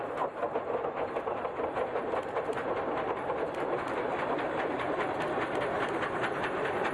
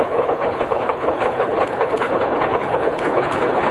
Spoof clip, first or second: second